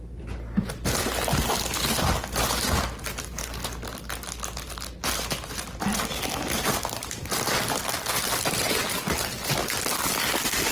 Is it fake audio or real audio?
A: real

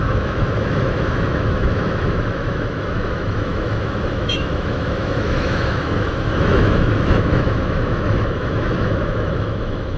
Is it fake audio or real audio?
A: fake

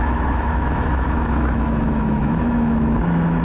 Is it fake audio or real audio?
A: fake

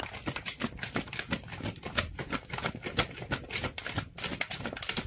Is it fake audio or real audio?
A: real